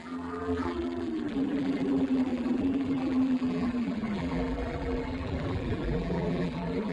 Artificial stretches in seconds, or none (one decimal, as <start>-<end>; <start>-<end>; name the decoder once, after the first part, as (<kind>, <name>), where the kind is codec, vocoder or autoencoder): 0.0-6.9 (vocoder, BigVGAN v2)